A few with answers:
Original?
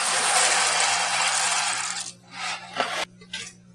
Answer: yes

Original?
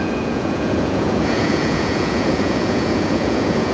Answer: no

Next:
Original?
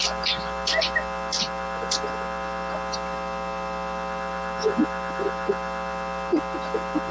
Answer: yes